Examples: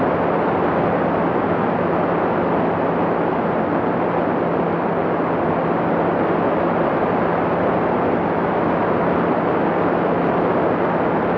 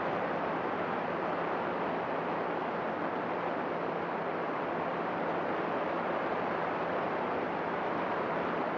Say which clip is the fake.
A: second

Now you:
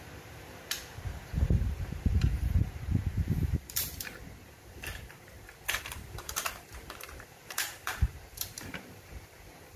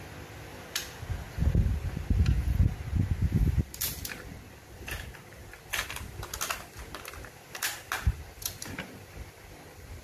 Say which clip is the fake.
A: first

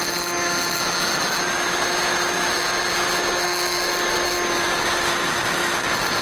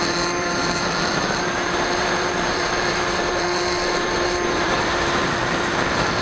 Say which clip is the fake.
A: second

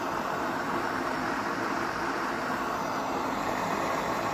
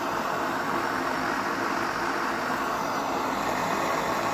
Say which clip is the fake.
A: first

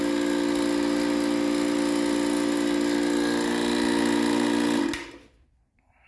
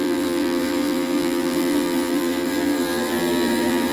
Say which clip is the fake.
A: second